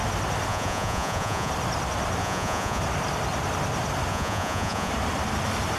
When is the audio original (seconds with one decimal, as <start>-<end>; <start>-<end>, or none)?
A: 0.0-0.5; 1.5-2.2; 2.8-4.1; 4.9-5.8